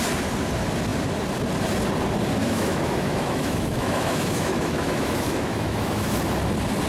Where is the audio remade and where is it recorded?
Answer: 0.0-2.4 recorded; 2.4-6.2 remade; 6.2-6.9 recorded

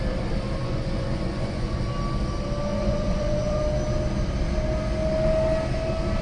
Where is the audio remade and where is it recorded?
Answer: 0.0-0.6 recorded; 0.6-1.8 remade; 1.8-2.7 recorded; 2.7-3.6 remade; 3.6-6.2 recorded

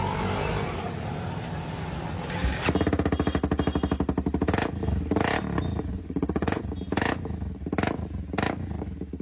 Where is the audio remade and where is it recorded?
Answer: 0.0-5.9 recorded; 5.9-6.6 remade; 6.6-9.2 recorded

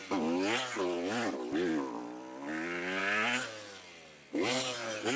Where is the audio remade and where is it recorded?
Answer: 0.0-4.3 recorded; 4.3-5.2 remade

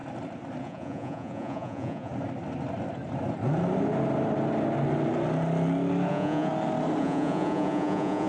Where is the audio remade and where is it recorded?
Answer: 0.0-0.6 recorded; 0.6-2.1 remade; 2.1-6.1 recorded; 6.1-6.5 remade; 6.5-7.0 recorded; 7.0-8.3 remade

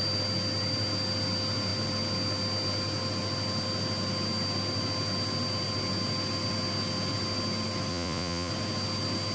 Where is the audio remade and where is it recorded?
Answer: 0.0-7.9 recorded; 7.9-8.5 remade; 8.5-9.3 recorded

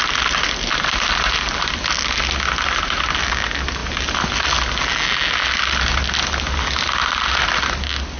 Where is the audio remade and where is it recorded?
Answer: 0.0-8.2 recorded